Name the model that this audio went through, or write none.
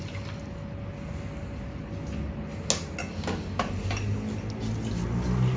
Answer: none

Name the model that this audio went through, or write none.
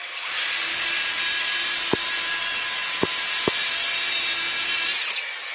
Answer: none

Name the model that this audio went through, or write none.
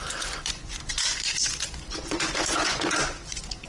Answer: vocoder, Vocos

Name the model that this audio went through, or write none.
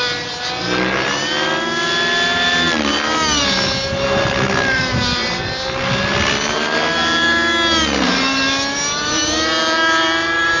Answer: none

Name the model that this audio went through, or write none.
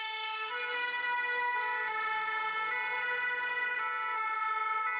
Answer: none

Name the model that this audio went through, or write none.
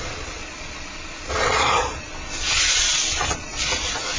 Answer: vocoder, Vocos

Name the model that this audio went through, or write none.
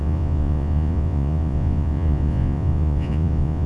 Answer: vocoder, Vocos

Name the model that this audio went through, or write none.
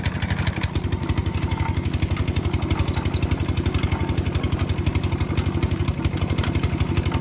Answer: none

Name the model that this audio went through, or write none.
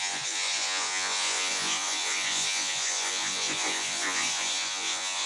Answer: vocoder, Vocos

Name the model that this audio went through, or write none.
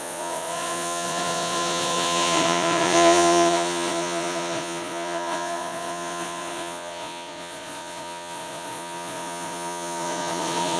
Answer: vocoder, Vocos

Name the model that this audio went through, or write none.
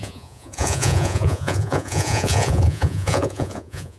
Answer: vocoder, Vocos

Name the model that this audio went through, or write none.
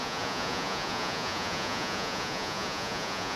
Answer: vocoder, Vocos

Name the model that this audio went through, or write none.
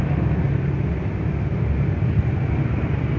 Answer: none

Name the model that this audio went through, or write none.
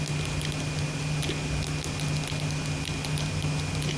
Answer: none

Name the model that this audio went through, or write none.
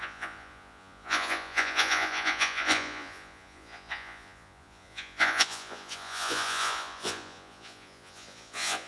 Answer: vocoder, Vocos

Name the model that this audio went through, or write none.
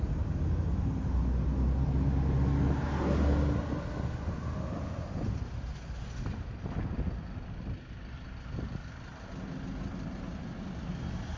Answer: none